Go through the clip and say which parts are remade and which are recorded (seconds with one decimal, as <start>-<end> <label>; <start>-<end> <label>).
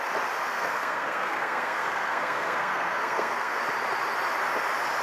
0.0-0.5 recorded; 0.5-3.5 remade; 3.5-5.0 recorded